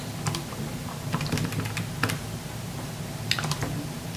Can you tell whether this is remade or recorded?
recorded